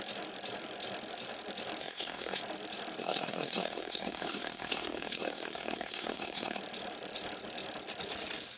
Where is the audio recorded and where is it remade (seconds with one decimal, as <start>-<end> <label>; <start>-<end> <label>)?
0.0-1.8 recorded; 1.8-2.4 remade; 2.4-3.0 recorded; 3.0-6.6 remade; 6.6-8.6 recorded